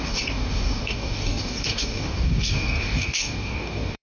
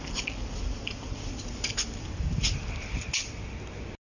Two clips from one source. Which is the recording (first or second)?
second